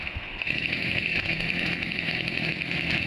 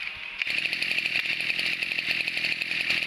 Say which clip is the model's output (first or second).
first